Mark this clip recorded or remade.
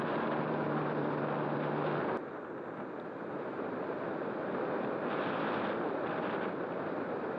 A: recorded